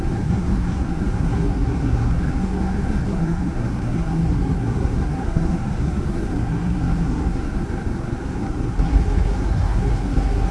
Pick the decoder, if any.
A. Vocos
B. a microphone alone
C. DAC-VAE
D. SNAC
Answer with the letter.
D